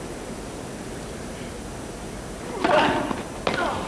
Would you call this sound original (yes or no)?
yes